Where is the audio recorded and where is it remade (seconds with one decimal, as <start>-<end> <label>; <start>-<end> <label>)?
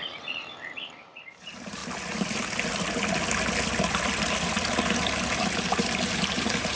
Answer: 0.0-1.8 remade; 1.8-5.6 recorded; 5.6-6.8 remade